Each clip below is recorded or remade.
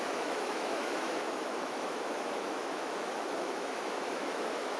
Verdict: remade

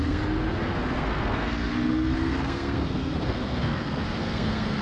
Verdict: remade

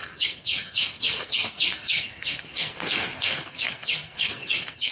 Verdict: remade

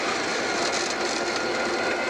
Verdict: recorded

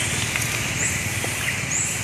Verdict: recorded